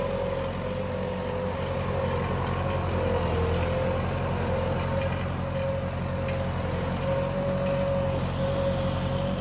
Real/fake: real